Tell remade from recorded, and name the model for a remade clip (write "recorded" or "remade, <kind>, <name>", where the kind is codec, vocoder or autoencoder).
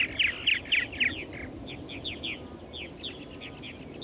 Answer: recorded